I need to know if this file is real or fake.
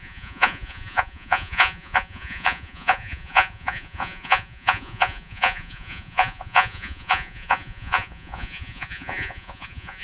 fake